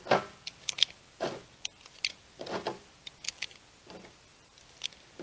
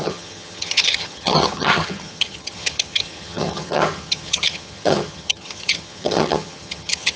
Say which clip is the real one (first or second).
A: first